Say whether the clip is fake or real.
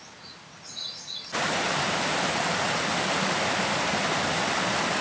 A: real